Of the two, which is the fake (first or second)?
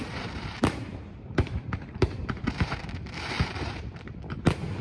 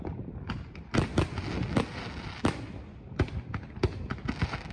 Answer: first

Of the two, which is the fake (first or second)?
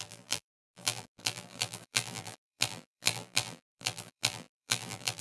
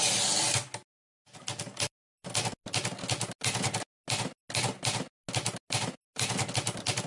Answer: first